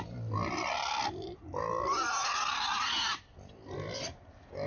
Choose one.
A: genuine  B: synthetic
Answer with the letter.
A